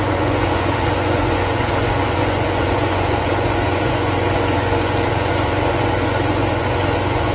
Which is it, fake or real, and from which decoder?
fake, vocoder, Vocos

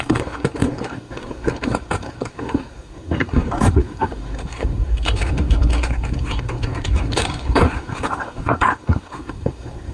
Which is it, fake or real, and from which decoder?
fake, codec, SNAC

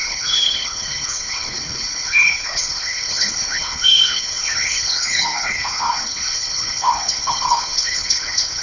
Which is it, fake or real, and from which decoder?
fake, codec, HILCodec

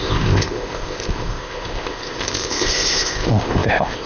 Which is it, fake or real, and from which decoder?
fake, codec, ZipCodec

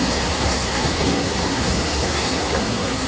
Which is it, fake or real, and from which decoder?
fake, codec, SNAC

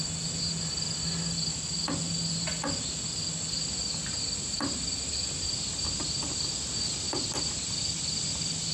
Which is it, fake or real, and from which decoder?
real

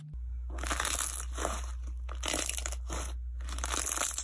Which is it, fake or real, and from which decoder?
real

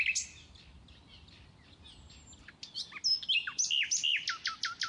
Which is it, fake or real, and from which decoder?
real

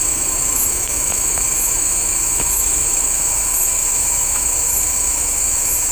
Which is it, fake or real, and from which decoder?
fake, autoencoder, DAC-VAE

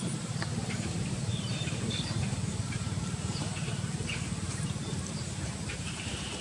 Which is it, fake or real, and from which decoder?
fake, vocoder, BigVGAN v2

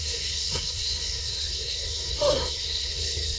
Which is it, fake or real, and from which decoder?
fake, codec, SNAC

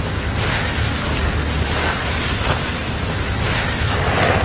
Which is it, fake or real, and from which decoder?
real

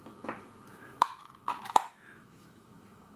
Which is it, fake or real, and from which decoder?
fake, autoencoder, DAC-VAE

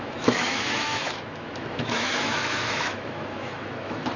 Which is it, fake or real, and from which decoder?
fake, autoencoder, DAC-VAE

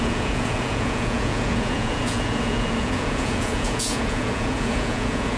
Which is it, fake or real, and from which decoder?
fake, vocoder, Vocos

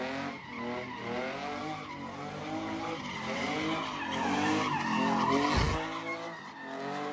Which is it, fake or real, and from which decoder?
real